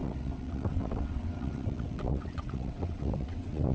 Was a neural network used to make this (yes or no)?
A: yes